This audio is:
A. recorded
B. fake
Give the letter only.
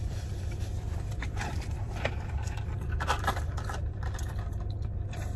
B